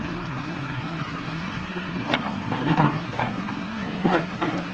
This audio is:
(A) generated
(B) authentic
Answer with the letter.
A